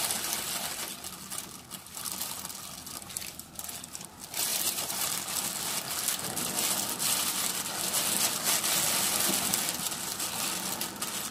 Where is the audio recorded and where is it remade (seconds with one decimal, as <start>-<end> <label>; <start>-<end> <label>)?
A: 0.0-4.5 recorded; 4.5-5.0 remade; 5.0-11.3 recorded